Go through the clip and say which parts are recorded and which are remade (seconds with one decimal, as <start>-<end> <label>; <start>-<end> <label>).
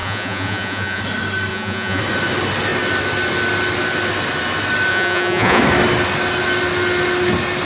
0.0-1.0 remade; 1.0-1.5 recorded; 1.5-2.0 remade; 2.0-4.9 recorded; 4.9-5.6 remade; 5.6-7.7 recorded